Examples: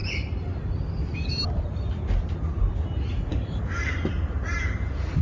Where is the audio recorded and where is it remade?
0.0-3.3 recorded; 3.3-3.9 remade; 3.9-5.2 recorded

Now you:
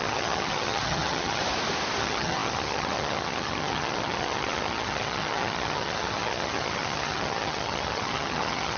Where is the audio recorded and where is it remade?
0.0-1.4 remade; 1.4-2.0 recorded; 2.0-8.8 remade

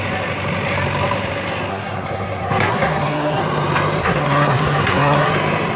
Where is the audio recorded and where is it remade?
0.0-1.7 recorded; 1.7-3.4 remade; 3.4-4.0 recorded; 4.0-5.3 remade; 5.3-5.8 recorded

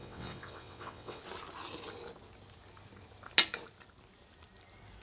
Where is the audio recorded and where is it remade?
0.0-1.2 remade; 1.2-5.0 recorded

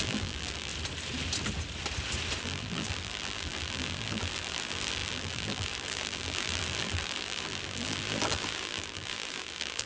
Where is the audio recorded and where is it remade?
0.0-0.7 remade; 0.7-2.4 recorded; 2.4-9.9 remade

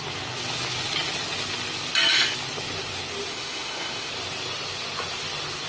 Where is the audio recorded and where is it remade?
0.0-3.3 recorded; 3.3-4.1 remade; 4.1-5.7 recorded

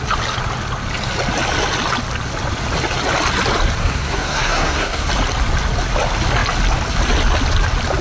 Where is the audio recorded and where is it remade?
0.0-3.8 recorded; 3.8-5.1 remade; 5.1-8.0 recorded

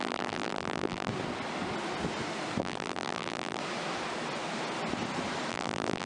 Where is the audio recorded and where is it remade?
0.0-1.1 remade; 1.1-2.6 recorded; 2.6-3.6 remade; 3.6-5.5 recorded; 5.5-6.1 remade